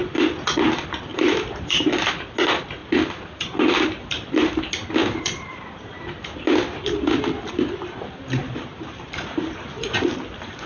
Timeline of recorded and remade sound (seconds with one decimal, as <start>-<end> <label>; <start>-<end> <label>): 0.0-1.1 recorded; 1.1-2.1 remade; 2.1-5.0 recorded; 5.0-6.0 remade; 6.0-8.4 recorded; 8.4-10.2 remade; 10.2-10.7 recorded

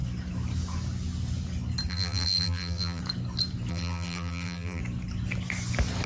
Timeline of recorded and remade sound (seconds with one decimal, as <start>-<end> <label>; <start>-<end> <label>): 0.0-1.9 recorded; 1.9-3.0 remade; 3.0-3.7 recorded; 3.7-4.8 remade; 4.8-6.1 recorded

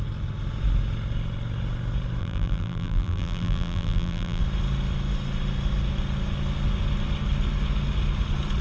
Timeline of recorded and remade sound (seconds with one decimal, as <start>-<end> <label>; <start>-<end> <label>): 0.0-2.2 recorded; 2.2-4.4 remade; 4.4-8.6 recorded

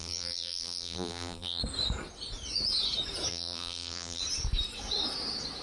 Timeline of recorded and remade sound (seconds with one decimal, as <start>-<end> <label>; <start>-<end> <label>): 0.0-1.6 remade; 1.6-3.3 recorded; 3.3-4.2 remade; 4.2-5.6 recorded

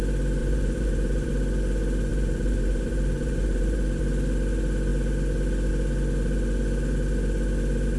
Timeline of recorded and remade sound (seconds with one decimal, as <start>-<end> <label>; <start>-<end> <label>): 0.0-0.4 recorded; 0.4-1.3 remade; 1.3-2.1 recorded; 2.1-4.0 remade; 4.0-8.0 recorded

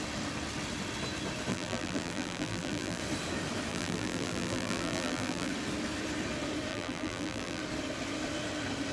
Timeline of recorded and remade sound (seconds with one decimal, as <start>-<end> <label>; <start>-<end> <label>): 0.0-1.5 recorded; 1.5-3.0 remade; 3.0-3.7 recorded; 3.7-5.5 remade; 5.5-6.7 recorded; 6.7-7.6 remade; 7.6-8.9 recorded

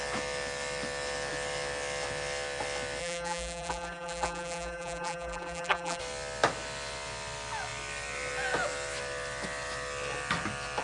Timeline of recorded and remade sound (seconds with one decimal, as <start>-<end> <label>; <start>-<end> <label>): 0.0-3.0 recorded; 3.0-6.0 remade; 6.0-10.8 recorded